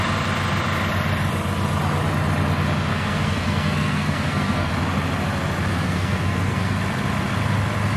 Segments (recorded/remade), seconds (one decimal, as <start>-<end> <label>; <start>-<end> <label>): 0.0-2.9 recorded; 2.9-4.7 remade; 4.7-5.7 recorded; 5.7-6.8 remade; 6.8-8.0 recorded